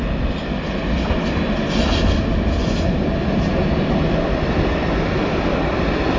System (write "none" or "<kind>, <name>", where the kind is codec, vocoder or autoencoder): none